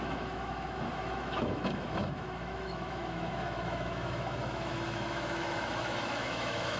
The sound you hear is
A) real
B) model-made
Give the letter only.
B